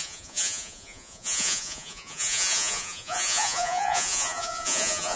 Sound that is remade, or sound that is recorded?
remade